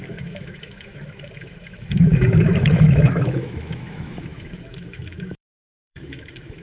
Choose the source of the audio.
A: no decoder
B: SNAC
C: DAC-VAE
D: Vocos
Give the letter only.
C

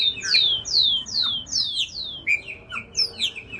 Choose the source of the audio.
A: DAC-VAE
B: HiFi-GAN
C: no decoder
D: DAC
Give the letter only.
C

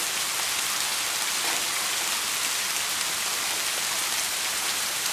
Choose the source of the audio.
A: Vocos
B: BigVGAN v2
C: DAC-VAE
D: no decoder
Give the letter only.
D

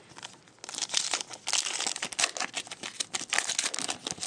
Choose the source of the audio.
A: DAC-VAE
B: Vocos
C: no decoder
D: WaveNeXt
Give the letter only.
C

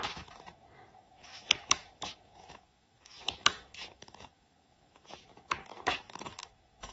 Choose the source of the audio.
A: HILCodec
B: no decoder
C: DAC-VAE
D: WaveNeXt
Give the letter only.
C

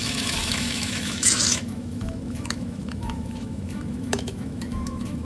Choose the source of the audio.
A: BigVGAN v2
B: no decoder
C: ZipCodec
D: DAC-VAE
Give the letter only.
D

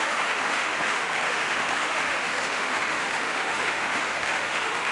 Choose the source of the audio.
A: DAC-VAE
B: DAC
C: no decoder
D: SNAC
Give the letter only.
A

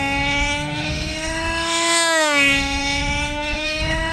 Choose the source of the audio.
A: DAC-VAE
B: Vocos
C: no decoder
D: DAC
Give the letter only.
A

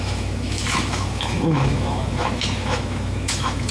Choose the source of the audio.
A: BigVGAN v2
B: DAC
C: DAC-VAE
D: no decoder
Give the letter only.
C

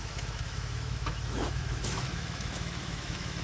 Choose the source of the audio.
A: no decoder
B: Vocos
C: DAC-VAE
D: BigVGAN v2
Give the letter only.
C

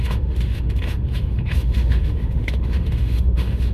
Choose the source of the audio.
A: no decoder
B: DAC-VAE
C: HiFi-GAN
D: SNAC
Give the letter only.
B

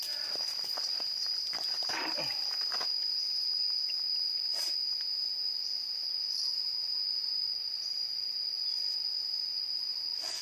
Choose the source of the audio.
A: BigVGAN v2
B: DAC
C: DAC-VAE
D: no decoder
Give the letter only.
D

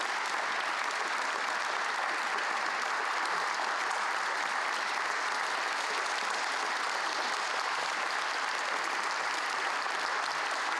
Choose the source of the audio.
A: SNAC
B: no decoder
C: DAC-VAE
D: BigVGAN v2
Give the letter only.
B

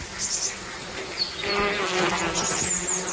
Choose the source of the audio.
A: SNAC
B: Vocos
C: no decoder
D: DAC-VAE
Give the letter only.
C